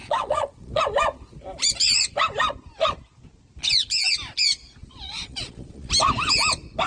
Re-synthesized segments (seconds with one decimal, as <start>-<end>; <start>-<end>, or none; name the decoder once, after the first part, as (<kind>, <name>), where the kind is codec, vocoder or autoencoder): 0.0-0.8 (vocoder, Vocos); 4.8-5.9